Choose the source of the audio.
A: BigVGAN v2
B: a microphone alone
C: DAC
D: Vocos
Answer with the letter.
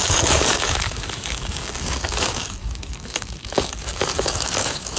C